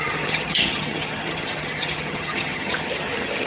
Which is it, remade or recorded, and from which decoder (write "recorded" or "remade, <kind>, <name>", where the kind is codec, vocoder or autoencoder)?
remade, vocoder, HiFi-GAN